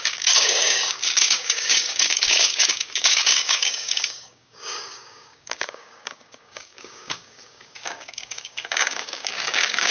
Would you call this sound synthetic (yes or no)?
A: yes